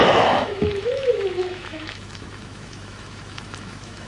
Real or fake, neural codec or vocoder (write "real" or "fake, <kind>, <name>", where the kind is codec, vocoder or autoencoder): fake, autoencoder, DAC-VAE